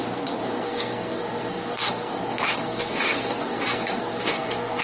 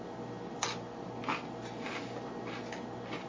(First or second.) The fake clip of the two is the first